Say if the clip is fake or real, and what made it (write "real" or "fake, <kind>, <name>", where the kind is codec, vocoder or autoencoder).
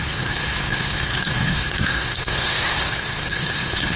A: fake, codec, SNAC